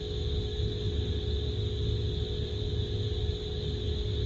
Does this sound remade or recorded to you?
recorded